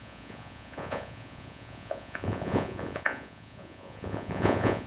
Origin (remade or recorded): remade